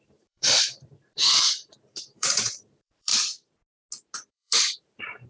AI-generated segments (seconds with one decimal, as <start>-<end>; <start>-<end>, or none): 0.0-3.1; 4.3-5.3

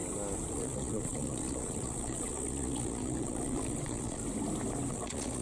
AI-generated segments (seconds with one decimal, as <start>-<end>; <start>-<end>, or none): 0.5-4.2; 4.9-5.4

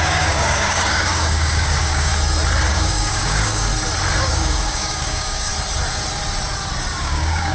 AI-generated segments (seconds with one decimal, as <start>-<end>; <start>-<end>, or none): 0.0-2.1; 2.7-3.7; 4.2-5.5; 7.0-7.5

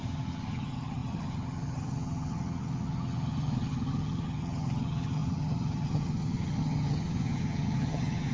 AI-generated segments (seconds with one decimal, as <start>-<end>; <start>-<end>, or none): 0.0-8.3

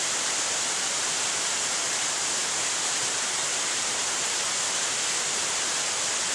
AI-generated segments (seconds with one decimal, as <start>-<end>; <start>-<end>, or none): none

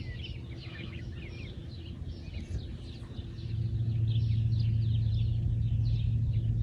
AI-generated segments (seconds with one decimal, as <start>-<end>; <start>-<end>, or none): 0.6-1.1

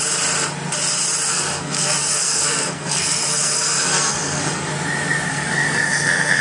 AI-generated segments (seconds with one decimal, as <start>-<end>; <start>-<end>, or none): 1.3-4.7; 5.3-6.4